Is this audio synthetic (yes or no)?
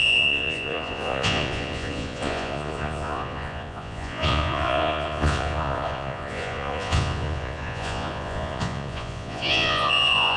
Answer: yes